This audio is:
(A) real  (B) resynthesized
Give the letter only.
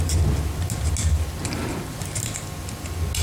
A